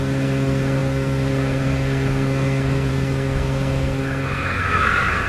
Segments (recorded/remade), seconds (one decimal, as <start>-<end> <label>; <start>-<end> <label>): 0.0-5.3 remade